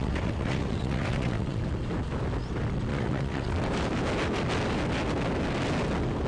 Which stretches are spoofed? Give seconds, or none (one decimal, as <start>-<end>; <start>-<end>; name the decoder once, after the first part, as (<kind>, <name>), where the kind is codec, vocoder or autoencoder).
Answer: 0.0-1.6 (vocoder, WaveNeXt); 2.9-3.5